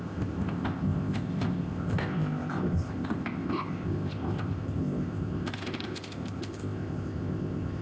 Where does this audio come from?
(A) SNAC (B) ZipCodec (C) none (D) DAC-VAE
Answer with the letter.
B